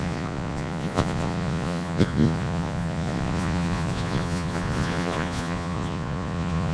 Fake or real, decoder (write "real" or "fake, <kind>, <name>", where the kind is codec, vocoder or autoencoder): fake, vocoder, Vocos